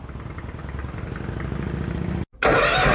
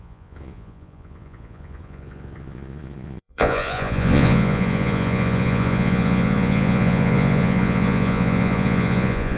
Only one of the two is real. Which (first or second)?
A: first